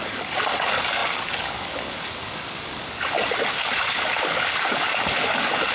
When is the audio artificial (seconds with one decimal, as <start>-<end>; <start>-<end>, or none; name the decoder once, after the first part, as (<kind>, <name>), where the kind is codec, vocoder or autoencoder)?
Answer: 0.0-5.7 (codec, DAC)